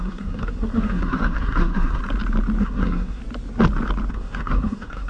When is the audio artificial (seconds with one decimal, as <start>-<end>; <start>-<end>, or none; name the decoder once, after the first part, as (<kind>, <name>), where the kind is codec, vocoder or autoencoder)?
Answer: 0.0-2.0 (codec, SNAC); 2.6-3.2; 4.1-5.1